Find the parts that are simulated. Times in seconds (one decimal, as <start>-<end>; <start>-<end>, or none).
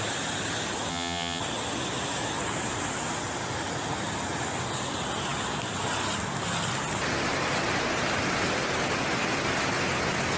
0.9-1.4